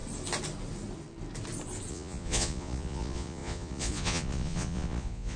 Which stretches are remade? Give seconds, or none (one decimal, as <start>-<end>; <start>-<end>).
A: 1.9-5.4